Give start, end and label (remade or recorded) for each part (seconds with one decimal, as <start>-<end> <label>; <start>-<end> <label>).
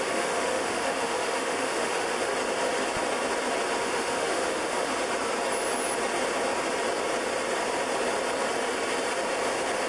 0.0-2.3 remade; 2.3-3.8 recorded; 3.8-4.9 remade; 4.9-9.9 recorded